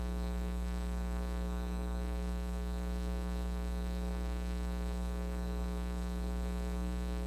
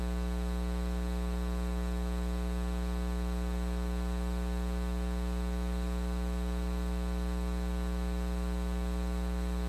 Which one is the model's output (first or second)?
first